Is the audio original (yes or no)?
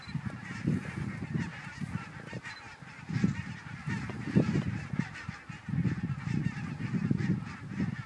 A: yes